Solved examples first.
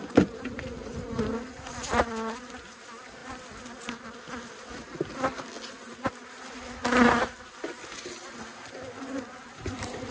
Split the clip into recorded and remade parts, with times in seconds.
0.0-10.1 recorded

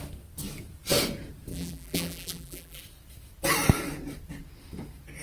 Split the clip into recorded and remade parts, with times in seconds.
0.0-1.5 recorded; 1.5-2.8 remade; 2.8-5.2 recorded

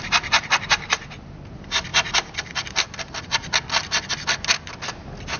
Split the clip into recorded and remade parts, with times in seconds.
0.0-5.4 recorded

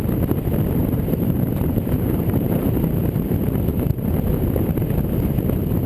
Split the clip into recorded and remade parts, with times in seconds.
0.0-0.8 recorded; 0.8-4.3 remade; 4.3-5.9 recorded